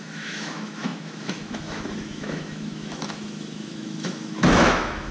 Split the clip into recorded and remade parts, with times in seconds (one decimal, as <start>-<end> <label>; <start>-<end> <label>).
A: 0.0-5.1 remade